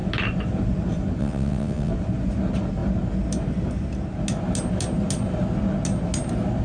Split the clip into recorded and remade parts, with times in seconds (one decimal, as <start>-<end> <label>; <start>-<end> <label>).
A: 0.0-1.2 recorded; 1.2-1.9 remade; 1.9-6.6 recorded